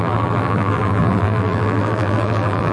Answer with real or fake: fake